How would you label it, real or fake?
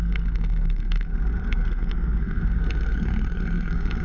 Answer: fake